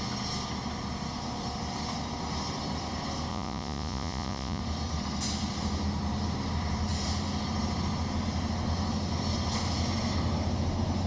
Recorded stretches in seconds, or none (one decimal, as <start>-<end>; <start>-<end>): 0.0-3.3; 4.6-11.1